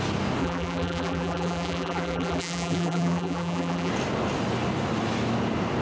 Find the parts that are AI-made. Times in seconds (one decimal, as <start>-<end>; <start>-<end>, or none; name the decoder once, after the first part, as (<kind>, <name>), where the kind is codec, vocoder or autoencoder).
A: 0.4-3.9 (vocoder, BigVGAN v2)